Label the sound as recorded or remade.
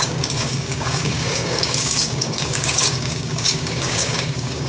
remade